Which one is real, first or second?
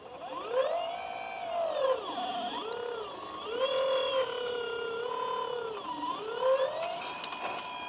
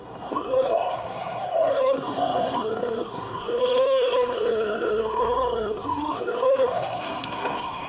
first